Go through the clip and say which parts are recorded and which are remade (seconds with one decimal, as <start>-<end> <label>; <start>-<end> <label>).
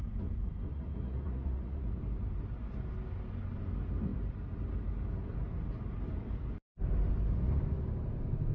0.0-0.7 recorded; 0.7-2.0 remade; 2.0-8.5 recorded